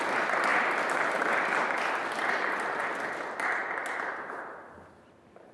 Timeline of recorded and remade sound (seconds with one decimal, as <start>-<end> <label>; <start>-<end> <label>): 0.0-5.5 recorded